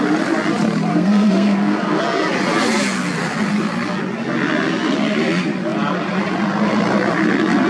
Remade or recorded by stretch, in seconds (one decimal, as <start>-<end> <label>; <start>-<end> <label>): 0.0-0.9 recorded; 0.9-2.0 remade; 2.0-7.7 recorded